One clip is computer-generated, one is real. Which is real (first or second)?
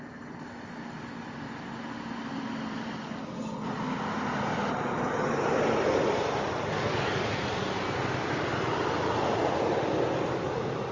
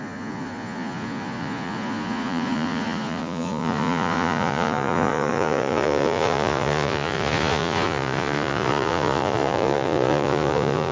first